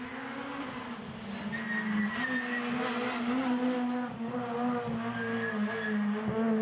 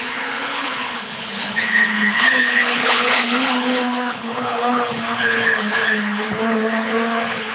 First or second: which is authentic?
first